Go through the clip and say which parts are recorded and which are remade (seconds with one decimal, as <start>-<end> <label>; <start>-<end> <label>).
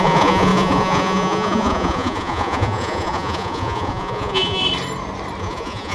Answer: 0.0-4.6 remade; 4.6-5.4 recorded; 5.4-5.9 remade